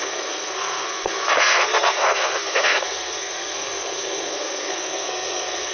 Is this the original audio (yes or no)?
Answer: no